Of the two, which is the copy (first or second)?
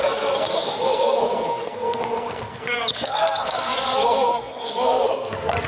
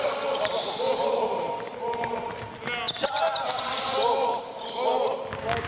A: first